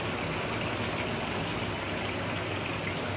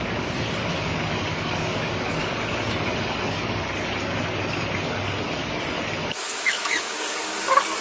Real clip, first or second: first